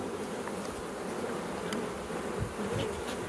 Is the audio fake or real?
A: real